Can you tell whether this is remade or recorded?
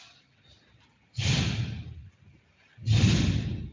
recorded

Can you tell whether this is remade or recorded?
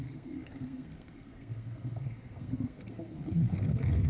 remade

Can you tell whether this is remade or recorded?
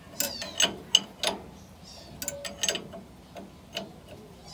recorded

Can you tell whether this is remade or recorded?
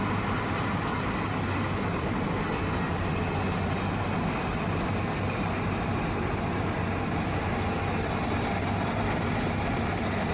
recorded